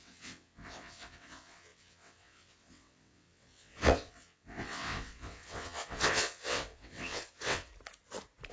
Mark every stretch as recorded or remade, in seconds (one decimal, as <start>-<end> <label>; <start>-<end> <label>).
0.0-7.7 remade; 7.7-8.5 recorded